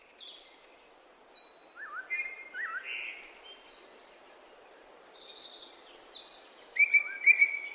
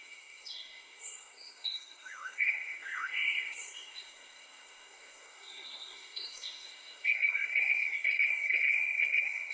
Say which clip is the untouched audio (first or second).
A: first